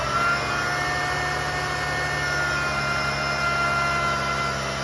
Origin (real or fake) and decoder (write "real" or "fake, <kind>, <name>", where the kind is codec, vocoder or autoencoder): real